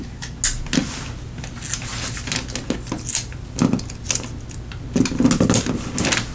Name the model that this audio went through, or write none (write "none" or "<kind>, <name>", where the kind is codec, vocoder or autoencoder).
none